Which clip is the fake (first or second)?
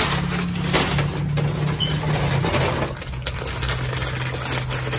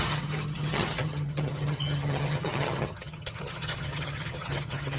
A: second